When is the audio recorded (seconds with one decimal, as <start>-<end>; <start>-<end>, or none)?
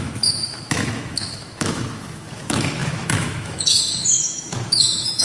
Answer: none